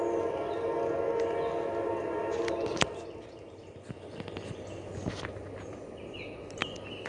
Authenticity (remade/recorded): recorded